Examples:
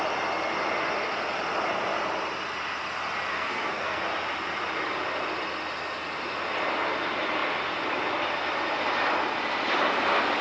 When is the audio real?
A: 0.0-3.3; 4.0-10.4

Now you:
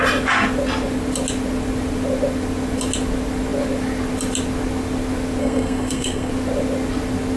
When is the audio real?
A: 0.0-5.4; 6.3-7.4

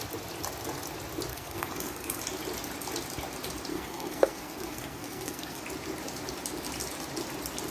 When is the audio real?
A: 0.0-1.3; 2.2-3.7; 5.6-7.7

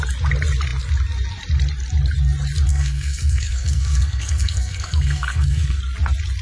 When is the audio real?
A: 0.0-2.7; 5.8-6.4